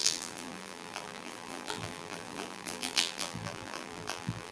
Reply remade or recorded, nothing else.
remade